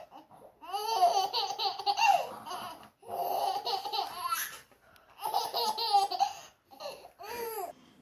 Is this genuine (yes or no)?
yes